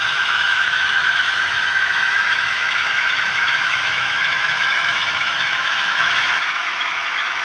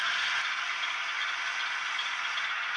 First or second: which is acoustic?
second